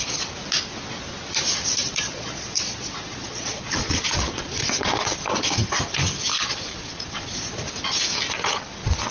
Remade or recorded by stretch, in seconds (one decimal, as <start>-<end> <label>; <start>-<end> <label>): 0.0-1.8 recorded; 1.8-5.0 remade; 5.0-6.4 recorded; 6.4-7.6 remade; 7.6-9.1 recorded